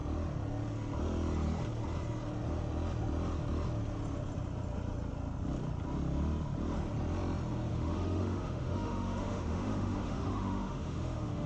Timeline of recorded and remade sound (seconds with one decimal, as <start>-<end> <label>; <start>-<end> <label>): 0.0-7.7 recorded; 7.7-11.5 remade